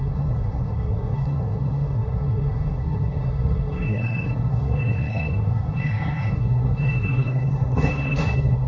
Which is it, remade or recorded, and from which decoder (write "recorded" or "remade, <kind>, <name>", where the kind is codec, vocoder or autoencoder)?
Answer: remade, codec, SNAC